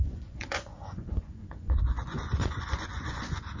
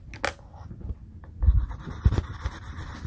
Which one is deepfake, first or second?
first